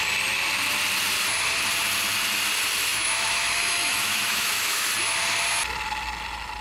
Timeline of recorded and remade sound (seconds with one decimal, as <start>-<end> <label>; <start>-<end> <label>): 0.0-2.9 recorded; 2.9-4.9 remade; 4.9-6.6 recorded